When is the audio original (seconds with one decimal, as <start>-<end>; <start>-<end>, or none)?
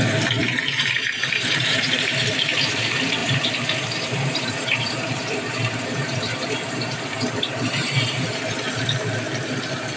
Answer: 0.0-0.4; 2.2-3.2; 8.2-10.0